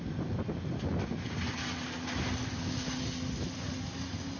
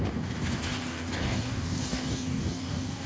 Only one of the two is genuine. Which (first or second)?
first